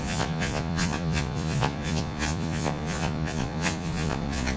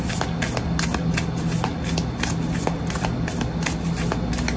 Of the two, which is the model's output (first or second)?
first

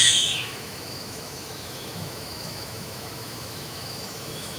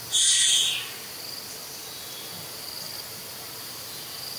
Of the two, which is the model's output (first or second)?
first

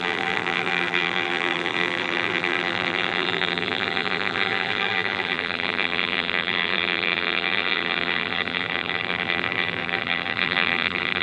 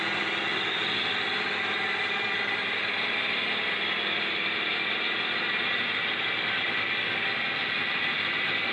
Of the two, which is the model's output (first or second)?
first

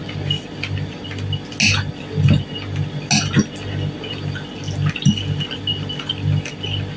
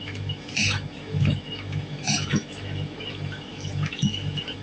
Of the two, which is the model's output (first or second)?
second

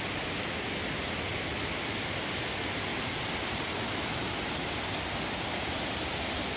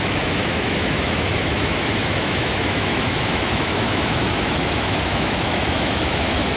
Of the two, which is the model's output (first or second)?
second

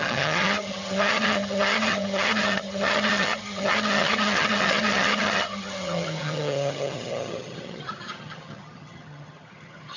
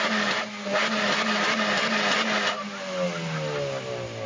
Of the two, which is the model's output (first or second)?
first